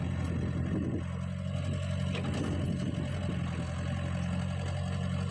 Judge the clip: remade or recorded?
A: recorded